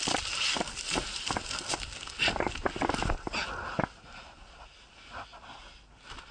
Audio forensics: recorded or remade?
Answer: recorded